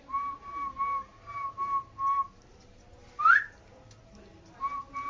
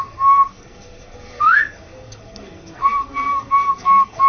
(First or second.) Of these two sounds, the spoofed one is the second